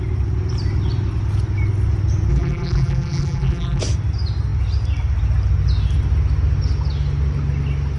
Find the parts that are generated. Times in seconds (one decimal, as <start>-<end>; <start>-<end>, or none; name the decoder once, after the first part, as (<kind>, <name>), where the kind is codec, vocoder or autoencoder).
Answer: 2.3-3.8 (vocoder, BigVGAN v2)